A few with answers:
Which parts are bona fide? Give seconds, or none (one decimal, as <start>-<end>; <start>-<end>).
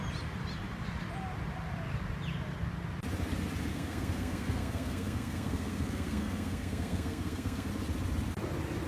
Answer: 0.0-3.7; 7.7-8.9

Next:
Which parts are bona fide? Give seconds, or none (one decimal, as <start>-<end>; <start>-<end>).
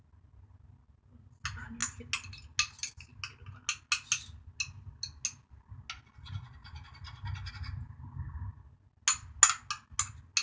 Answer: 0.0-10.4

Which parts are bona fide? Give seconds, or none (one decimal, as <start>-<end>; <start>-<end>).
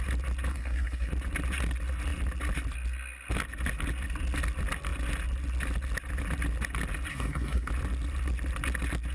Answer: 0.0-0.5; 1.1-7.1; 7.7-9.1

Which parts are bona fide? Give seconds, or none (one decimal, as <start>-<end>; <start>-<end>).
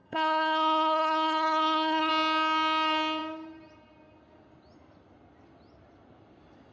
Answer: 2.1-6.7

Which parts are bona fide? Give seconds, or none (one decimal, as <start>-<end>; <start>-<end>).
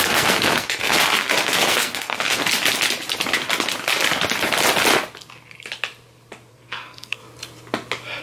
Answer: 2.4-6.5; 7.2-8.2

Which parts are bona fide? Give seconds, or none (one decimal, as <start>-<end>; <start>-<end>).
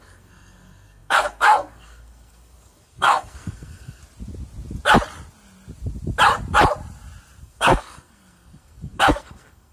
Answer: 4.0-7.4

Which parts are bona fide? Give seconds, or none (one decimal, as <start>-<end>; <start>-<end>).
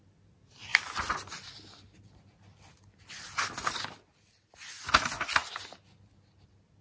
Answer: 0.0-6.8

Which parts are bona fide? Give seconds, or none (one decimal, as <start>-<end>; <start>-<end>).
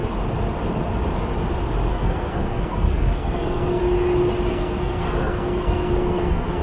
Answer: 0.0-1.9; 3.8-4.5